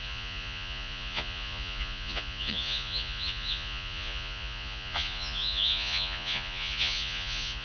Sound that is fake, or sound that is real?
fake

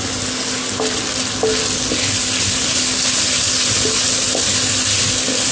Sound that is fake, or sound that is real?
real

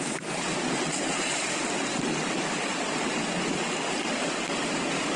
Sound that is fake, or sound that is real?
real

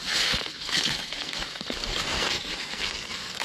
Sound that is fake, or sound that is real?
fake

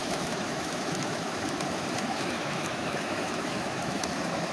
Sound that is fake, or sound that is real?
fake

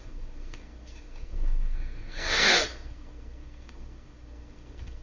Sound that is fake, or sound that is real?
fake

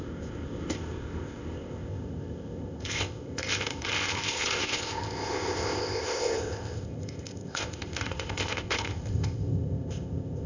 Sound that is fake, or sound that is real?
fake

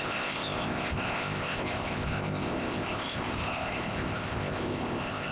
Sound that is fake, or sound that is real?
fake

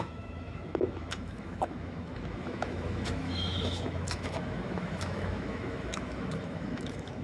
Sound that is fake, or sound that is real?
fake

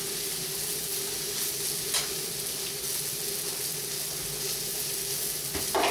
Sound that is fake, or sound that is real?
real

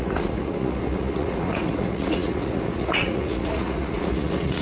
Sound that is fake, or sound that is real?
fake